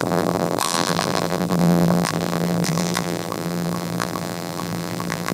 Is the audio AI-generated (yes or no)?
yes